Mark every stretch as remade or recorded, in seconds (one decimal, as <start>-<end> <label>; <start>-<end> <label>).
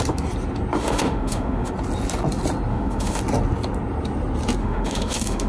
0.0-0.8 recorded; 0.8-1.7 remade; 1.7-2.7 recorded; 2.7-3.2 remade; 3.2-4.6 recorded; 4.6-5.5 remade